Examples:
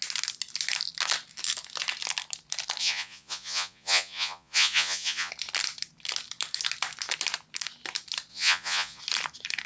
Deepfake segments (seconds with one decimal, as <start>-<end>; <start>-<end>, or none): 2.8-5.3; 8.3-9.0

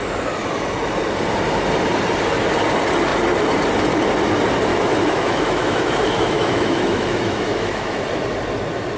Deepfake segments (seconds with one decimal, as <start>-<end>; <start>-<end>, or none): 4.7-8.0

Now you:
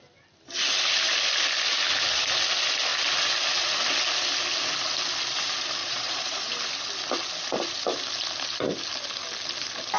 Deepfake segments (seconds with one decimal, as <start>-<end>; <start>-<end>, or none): 5.8-6.5

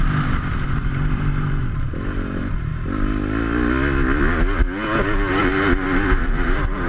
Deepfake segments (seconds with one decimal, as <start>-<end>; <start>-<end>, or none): 0.0-2.7; 5.3-6.9